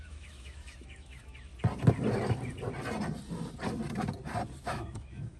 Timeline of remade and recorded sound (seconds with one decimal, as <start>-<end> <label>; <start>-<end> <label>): 0.0-1.5 remade; 1.5-4.6 recorded; 4.6-5.4 remade